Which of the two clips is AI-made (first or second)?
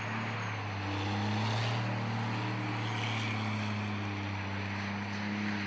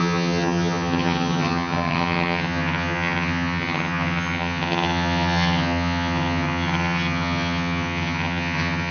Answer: second